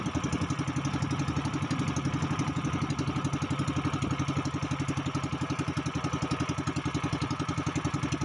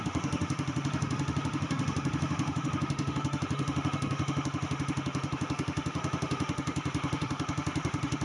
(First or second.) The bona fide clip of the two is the first